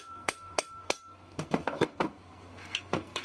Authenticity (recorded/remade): remade